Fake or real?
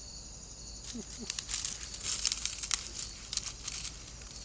real